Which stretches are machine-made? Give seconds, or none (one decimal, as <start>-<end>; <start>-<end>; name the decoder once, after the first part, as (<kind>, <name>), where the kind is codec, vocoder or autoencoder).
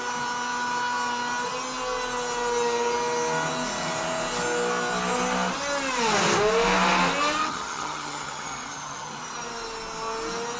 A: 7.4-9.2 (vocoder, HiFi-GAN)